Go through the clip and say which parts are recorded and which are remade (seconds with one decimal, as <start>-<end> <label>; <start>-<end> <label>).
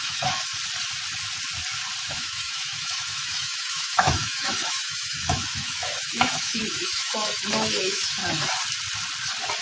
0.0-0.5 remade; 0.5-2.0 recorded; 2.0-8.2 remade; 8.2-9.6 recorded